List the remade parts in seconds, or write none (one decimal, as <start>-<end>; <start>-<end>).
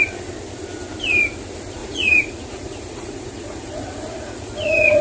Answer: 1.8-5.0